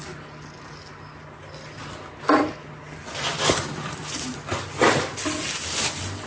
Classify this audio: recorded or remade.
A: recorded